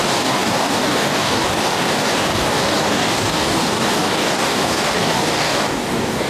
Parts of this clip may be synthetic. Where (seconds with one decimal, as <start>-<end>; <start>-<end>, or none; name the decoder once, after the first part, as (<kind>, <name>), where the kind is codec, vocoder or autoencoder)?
0.0-6.3 (codec, DAC)